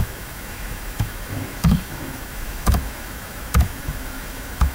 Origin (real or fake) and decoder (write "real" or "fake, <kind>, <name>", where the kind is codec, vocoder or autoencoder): fake, autoencoder, DAC-VAE